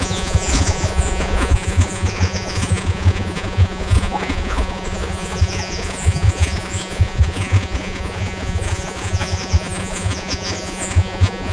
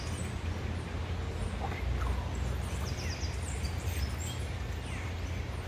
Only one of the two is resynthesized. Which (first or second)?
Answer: first